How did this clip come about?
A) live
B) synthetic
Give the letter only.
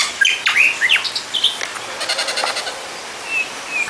A